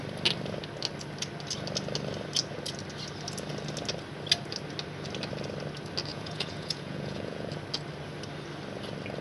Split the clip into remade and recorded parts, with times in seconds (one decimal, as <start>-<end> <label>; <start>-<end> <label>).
0.0-6.1 recorded; 6.1-7.6 remade; 7.6-9.2 recorded